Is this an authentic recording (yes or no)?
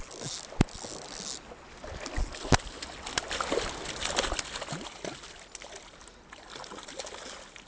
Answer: yes